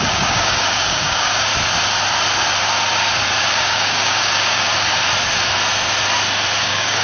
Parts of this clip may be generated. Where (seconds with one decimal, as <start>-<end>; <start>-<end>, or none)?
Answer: 0.0-1.5; 3.4-4.7; 6.6-7.0